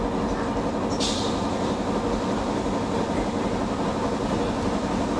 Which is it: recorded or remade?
recorded